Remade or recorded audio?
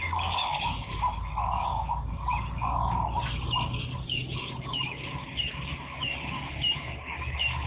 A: remade